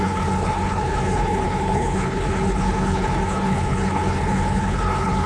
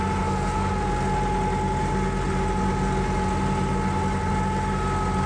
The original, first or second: second